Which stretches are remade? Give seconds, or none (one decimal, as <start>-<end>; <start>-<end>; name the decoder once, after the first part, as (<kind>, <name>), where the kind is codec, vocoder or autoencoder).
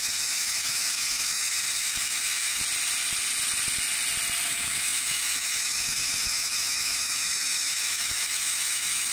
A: 0.0-2.6 (autoencoder, DAC-VAE); 4.4-9.1